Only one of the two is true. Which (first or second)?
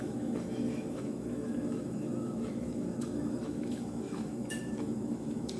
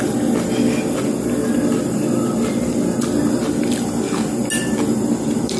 second